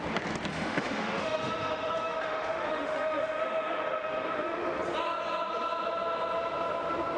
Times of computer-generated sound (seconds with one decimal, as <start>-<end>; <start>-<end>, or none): 0.5-4.8